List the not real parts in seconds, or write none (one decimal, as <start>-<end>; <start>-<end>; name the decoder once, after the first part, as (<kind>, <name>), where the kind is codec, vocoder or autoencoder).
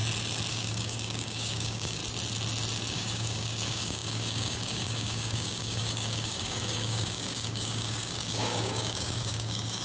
0.5-2.0 (codec, DAC); 2.9-9.8